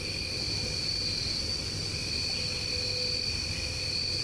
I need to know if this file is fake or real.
real